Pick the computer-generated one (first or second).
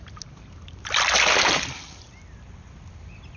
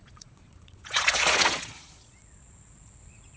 second